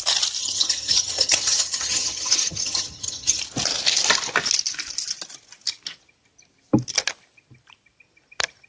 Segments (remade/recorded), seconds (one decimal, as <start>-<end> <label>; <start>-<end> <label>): 0.0-0.4 recorded; 0.4-3.4 remade; 3.4-8.7 recorded